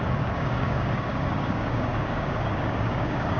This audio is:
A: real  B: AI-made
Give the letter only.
B